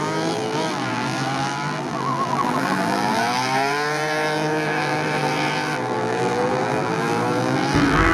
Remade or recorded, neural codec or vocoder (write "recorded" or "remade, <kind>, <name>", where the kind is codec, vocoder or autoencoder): remade, vocoder, BigVGAN v2